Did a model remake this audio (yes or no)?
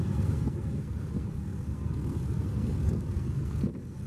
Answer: yes